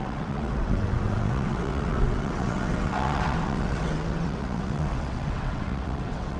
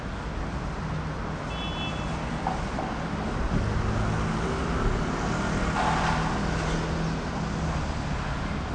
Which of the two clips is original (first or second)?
second